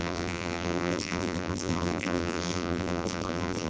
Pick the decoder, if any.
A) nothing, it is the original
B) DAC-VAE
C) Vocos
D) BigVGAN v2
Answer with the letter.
D